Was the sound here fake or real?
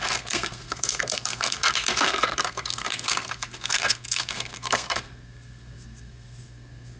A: fake